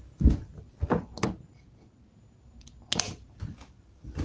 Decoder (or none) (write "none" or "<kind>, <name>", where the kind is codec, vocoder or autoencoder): none